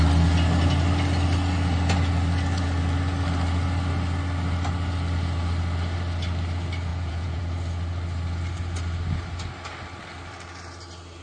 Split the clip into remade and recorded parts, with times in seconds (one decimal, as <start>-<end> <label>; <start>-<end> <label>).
0.0-6.9 recorded; 6.9-7.4 remade; 7.4-11.2 recorded